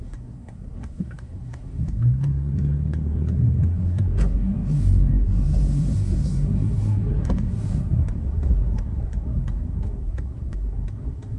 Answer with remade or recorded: remade